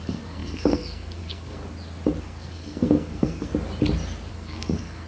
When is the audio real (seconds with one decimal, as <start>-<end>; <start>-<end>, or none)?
1.6-2.2; 3.5-4.3